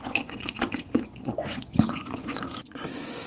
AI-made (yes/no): yes